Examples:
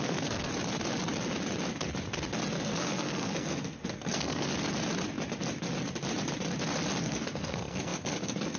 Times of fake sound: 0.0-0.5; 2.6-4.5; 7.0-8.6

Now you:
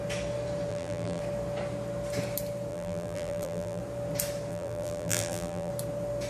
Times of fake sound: 0.7-1.2; 2.7-3.8; 4.5-5.7

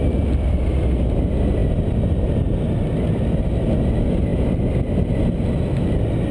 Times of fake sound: none